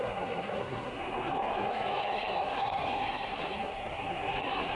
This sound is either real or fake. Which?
fake